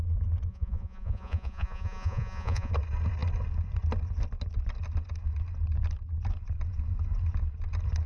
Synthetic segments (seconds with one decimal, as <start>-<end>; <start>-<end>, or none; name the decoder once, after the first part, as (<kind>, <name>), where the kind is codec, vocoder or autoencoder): 0.5-2.7 (vocoder, Vocos)